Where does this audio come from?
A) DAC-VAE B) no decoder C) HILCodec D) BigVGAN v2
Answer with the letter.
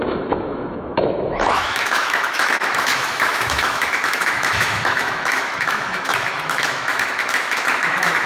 A